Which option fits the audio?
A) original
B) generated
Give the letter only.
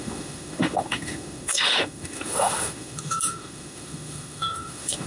B